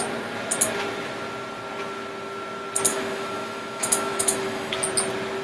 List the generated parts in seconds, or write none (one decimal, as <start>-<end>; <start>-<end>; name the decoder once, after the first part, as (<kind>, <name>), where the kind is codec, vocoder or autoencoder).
2.9-4.7 (autoencoder, DAC-VAE)